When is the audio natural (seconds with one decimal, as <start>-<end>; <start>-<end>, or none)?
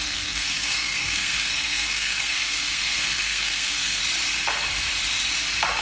4.0-5.8